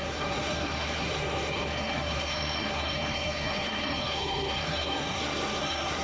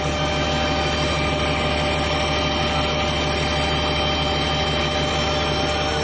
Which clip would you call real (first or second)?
second